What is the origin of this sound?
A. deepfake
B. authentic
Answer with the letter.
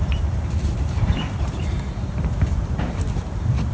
A